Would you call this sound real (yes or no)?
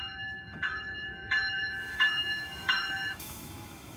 no